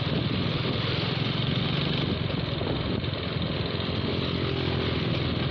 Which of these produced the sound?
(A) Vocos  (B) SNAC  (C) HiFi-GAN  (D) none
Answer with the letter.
D